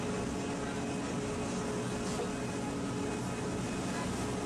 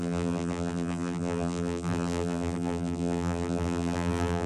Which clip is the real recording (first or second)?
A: first